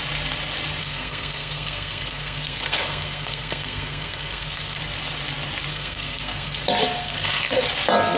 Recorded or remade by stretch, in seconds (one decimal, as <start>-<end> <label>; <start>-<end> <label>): 0.0-0.8 recorded; 0.8-4.8 remade; 4.8-5.7 recorded; 5.7-6.6 remade; 6.6-7.0 recorded; 7.0-7.6 remade; 7.6-8.2 recorded